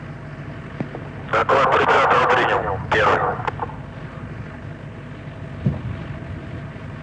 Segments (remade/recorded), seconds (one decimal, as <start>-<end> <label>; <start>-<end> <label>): 0.0-7.0 recorded